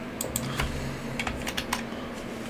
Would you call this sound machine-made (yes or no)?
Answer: no